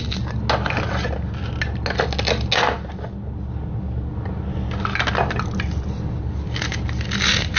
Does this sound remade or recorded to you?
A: recorded